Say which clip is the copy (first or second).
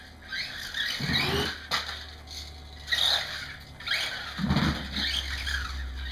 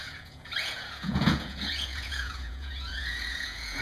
second